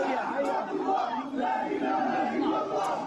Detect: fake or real real